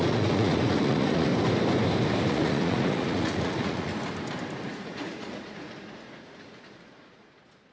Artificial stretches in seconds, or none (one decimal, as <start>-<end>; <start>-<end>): 0.0-1.3; 2.3-3.9; 4.7-7.7